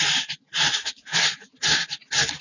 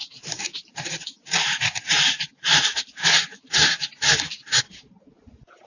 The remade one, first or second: second